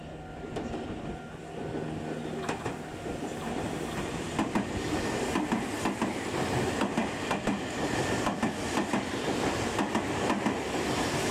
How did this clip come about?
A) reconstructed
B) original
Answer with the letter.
B